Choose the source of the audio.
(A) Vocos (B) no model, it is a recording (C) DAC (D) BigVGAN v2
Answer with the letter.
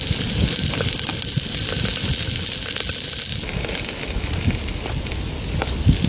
B